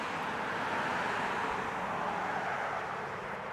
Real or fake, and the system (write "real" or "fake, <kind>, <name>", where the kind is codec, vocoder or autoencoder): real